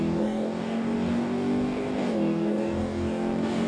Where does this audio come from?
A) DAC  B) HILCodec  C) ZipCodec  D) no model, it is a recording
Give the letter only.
A